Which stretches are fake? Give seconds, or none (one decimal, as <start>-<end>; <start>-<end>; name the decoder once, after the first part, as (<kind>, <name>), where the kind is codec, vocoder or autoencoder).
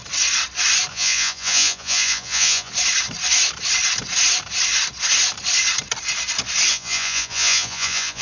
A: 0.9-2.7 (vocoder, Vocos); 6.7-8.2